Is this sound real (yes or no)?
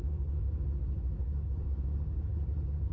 no